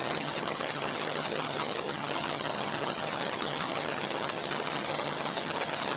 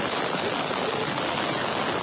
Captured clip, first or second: second